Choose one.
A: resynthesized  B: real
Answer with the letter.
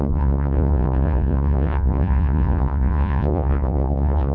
A